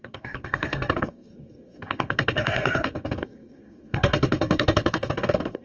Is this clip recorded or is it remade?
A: remade